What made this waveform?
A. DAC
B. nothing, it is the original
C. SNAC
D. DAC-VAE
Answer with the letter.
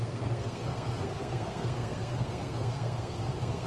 C